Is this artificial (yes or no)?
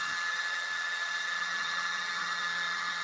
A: yes